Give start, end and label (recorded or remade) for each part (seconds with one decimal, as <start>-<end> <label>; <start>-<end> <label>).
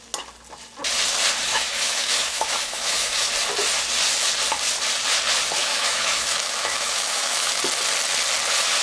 0.0-1.5 recorded; 1.5-3.3 remade; 3.3-5.6 recorded; 5.6-7.6 remade; 7.6-8.8 recorded